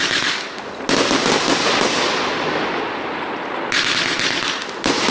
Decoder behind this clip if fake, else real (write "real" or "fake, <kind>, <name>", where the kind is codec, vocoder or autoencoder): real